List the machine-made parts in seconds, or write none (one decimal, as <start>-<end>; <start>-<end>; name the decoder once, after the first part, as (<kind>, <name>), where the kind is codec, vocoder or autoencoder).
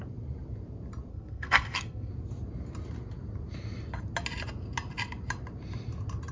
1.1-2.1 (codec, SNAC)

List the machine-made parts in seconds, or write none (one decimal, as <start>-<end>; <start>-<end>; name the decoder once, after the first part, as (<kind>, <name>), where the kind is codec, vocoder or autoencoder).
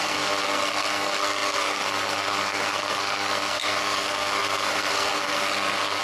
0.0-6.0 (codec, SNAC)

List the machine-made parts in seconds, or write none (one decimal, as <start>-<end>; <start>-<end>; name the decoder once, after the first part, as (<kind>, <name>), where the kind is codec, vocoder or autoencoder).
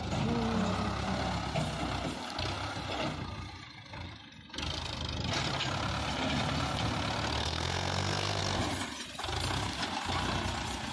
7.4-8.4 (codec, SNAC)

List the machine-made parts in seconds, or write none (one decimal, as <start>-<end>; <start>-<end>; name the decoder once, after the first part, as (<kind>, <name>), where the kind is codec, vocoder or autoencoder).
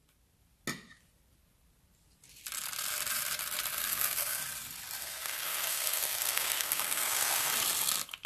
3.8-4.4 (codec, SNAC); 5.0-7.5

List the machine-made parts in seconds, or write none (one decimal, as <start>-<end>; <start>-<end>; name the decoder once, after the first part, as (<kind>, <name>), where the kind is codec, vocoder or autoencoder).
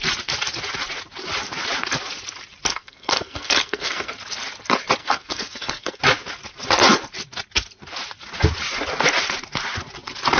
2.7-4.1 (codec, SNAC); 5.0-6.0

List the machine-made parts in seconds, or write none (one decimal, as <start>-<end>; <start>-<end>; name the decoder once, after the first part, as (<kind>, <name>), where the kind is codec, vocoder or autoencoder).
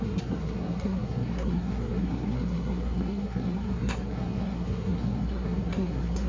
0.0-6.3 (codec, SNAC)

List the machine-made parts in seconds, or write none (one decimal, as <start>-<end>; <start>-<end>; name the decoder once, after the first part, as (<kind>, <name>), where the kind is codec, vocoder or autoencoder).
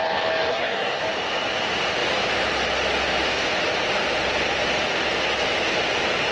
0.5-1.0 (codec, SNAC)